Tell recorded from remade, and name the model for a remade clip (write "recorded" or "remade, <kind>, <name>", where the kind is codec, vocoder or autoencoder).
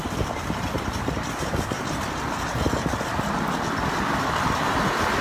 recorded